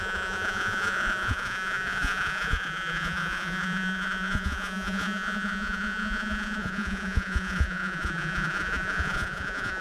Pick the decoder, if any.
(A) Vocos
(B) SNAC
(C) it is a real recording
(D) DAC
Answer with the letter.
A